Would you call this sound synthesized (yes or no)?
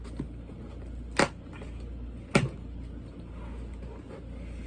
no